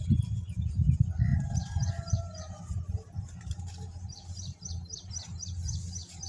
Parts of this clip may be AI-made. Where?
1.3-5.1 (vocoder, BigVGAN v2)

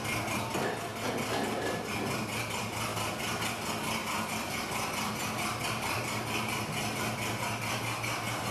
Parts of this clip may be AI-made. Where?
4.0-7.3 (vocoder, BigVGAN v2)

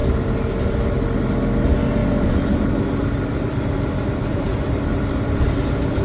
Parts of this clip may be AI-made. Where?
2.0-4.9 (vocoder, BigVGAN v2)